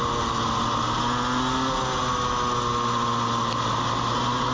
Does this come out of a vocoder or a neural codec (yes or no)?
no